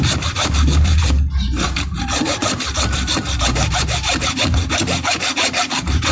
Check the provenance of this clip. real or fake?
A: fake